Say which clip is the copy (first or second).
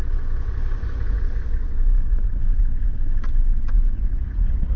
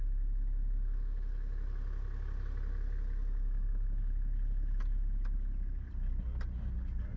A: first